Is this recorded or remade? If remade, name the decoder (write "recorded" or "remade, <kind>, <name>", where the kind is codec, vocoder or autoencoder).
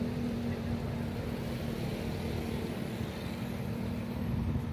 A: recorded